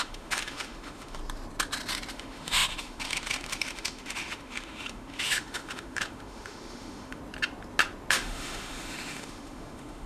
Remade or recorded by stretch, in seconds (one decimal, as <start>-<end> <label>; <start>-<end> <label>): 0.0-1.2 remade; 1.2-2.1 recorded; 2.1-7.2 remade; 7.2-8.1 recorded; 8.1-10.1 remade